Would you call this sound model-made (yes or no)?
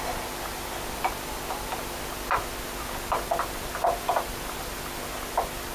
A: no